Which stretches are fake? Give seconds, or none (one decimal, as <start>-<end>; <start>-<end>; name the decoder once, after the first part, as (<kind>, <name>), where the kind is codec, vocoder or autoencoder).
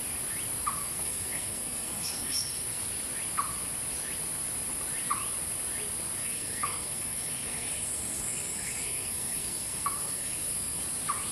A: 0.8-2.8 (codec, SNAC); 6.2-10.8